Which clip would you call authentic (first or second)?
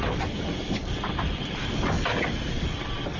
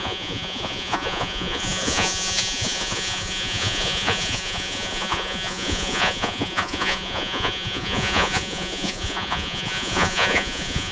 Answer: first